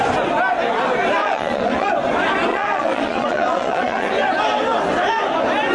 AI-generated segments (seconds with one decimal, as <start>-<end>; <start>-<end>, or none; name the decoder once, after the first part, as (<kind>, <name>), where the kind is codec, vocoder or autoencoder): 1.2-1.9 (vocoder, Vocos); 2.5-4.1